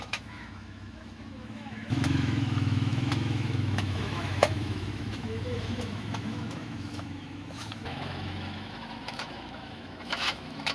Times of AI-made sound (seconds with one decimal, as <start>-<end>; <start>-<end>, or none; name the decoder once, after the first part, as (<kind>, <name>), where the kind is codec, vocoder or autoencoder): 0.0-10.7 (autoencoder, DAC-VAE)